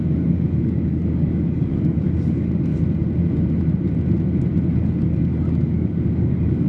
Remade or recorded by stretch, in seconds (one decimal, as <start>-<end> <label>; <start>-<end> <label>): 0.0-2.7 remade; 2.7-4.7 recorded; 4.7-6.7 remade